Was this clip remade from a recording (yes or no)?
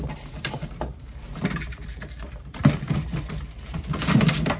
yes